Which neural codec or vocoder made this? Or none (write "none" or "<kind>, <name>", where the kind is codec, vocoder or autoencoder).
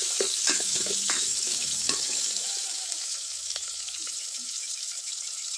autoencoder, DAC-VAE